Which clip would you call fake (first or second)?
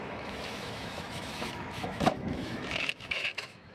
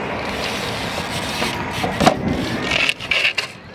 first